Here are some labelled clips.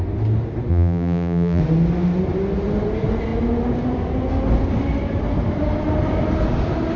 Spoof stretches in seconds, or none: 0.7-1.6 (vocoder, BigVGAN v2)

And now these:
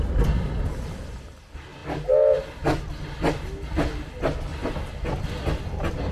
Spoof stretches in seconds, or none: none

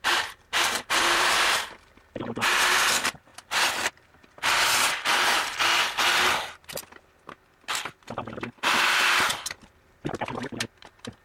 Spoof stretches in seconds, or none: 0.0-3.3 (vocoder, BigVGAN v2); 3.9-5.8; 8.9-9.3; 10.1-11.2

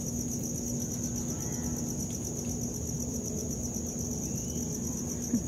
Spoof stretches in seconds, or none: 3.1-3.7 (vocoder, BigVGAN v2)

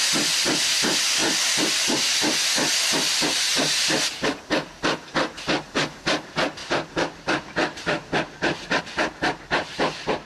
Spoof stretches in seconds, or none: 6.6-8.8 (vocoder, BigVGAN v2)